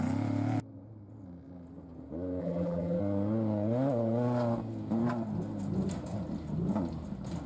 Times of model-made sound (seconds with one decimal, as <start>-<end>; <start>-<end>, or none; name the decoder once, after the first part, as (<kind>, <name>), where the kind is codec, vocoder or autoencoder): 2.4-3.0 (vocoder, BigVGAN v2)